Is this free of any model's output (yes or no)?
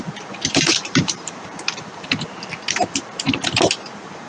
no